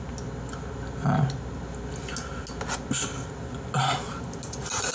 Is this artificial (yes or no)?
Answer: no